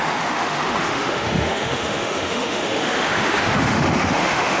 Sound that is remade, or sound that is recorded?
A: remade